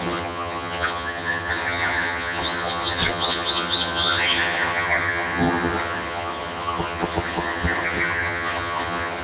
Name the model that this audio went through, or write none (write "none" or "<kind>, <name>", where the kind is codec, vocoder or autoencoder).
vocoder, HiFi-GAN